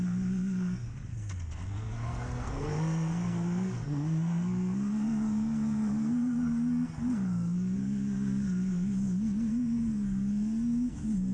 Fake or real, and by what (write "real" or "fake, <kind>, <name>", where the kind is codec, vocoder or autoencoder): fake, codec, SNAC